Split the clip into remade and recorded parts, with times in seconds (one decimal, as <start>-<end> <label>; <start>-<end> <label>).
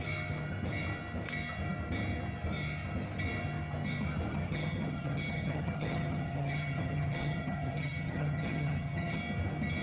0.0-4.3 recorded; 4.3-9.2 remade; 9.2-9.8 recorded